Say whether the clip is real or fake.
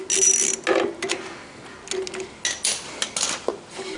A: real